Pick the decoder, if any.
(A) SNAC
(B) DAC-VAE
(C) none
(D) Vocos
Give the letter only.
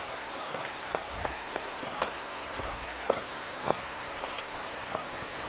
A